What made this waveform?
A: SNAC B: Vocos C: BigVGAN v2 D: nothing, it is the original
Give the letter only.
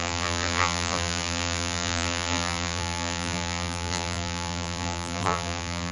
C